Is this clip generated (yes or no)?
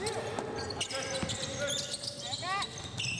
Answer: no